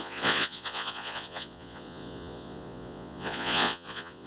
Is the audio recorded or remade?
remade